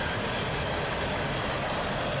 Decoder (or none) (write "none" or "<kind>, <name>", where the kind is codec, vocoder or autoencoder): none